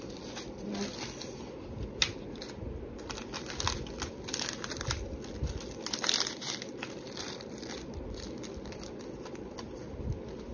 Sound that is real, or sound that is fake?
real